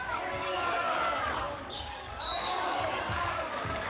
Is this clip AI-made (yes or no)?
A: yes